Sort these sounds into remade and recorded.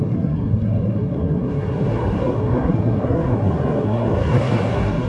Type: remade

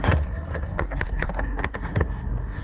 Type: remade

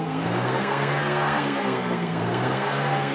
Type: remade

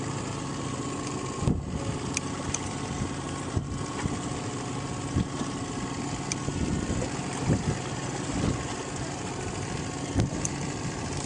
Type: recorded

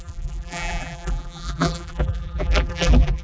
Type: remade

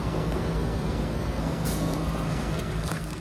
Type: remade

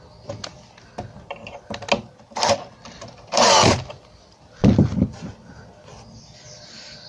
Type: recorded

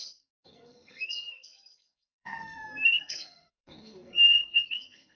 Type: remade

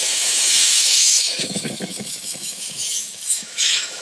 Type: remade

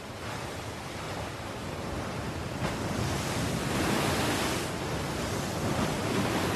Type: recorded